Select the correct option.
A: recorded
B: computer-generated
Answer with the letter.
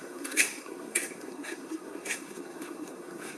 B